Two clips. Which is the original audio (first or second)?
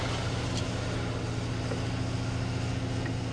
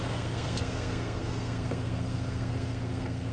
first